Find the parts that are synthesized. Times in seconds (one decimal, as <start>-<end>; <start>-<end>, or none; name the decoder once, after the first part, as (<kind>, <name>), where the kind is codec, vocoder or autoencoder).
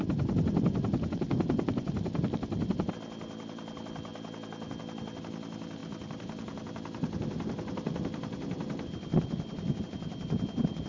none